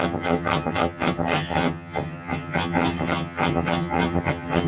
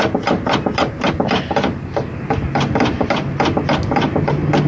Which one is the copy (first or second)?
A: first